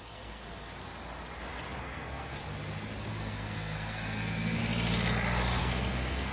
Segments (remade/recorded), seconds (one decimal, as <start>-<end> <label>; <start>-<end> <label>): 0.0-0.8 remade; 0.8-1.8 recorded; 1.8-2.4 remade; 2.4-3.1 recorded; 3.1-4.6 remade; 4.6-5.6 recorded; 5.6-6.3 remade